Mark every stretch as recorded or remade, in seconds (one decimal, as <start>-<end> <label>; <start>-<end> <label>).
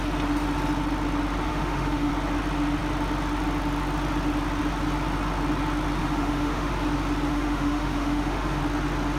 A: 0.0-1.5 recorded; 1.5-2.1 remade; 2.1-6.0 recorded; 6.0-6.7 remade; 6.7-7.3 recorded; 7.3-8.6 remade; 8.6-9.2 recorded